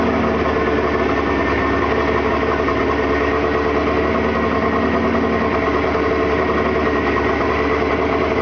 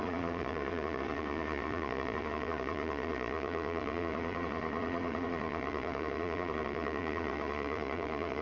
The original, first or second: first